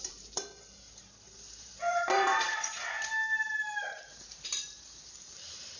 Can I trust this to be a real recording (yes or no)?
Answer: no